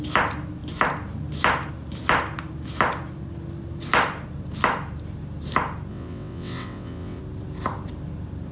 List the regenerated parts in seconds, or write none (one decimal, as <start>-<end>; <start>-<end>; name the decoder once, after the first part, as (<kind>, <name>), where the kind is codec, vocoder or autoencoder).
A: 5.9-7.2 (vocoder, WaveNeXt)